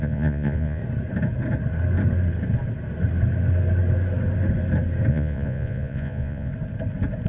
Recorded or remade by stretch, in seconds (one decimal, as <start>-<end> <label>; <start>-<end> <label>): 0.0-0.8 remade; 0.8-5.1 recorded; 5.1-6.5 remade; 6.5-7.3 recorded